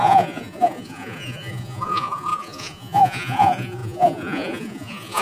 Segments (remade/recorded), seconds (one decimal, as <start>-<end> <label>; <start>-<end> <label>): 0.0-5.2 remade